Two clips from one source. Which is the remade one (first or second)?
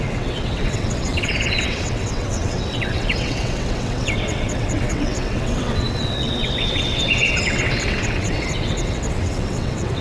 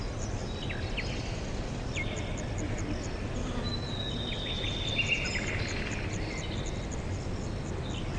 first